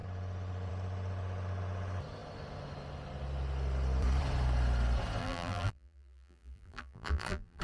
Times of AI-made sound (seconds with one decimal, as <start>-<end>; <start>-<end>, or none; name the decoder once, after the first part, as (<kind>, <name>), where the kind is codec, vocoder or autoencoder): 5.2-7.6 (vocoder, BigVGAN v2)